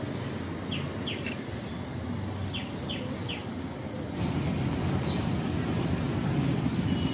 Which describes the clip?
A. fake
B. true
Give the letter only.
B